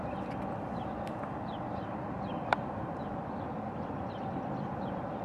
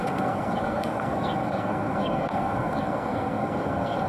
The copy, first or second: second